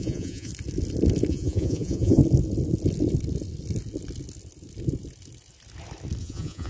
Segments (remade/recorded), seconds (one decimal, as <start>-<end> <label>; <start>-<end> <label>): 0.0-0.5 remade; 0.5-1.3 recorded; 1.3-2.2 remade; 2.2-6.2 recorded; 6.2-6.7 remade